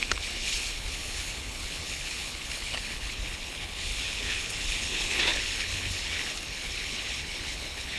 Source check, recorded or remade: remade